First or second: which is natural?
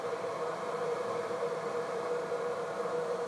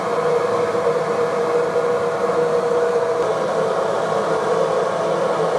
second